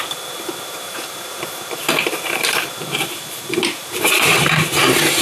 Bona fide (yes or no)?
no